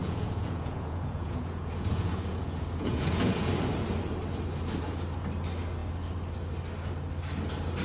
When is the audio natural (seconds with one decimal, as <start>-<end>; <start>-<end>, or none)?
3.5-7.8